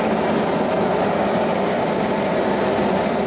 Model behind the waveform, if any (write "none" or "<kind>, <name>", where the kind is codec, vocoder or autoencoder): none